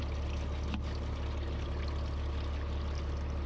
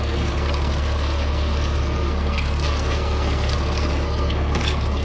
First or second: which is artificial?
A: second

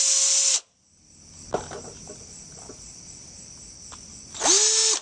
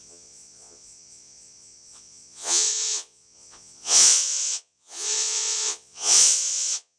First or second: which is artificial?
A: second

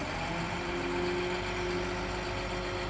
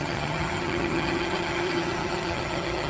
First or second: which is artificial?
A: second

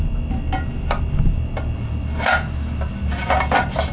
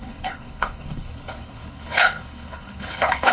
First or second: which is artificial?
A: second